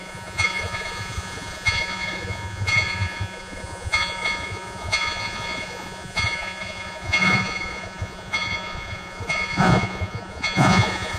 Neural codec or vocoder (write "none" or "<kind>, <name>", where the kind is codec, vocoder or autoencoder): vocoder, Vocos